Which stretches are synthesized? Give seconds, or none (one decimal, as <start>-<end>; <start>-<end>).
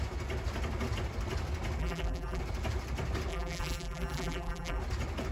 1.8-2.4; 3.3-4.8